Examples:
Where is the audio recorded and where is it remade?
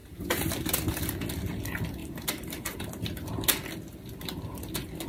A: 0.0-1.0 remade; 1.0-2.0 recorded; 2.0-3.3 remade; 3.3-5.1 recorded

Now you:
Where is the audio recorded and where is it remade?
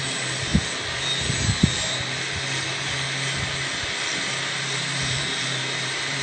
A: 0.0-0.5 remade; 0.5-4.2 recorded; 4.2-6.2 remade